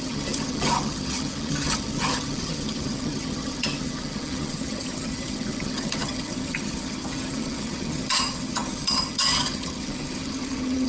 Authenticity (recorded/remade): remade